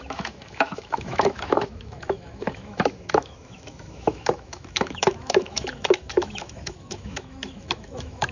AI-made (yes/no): yes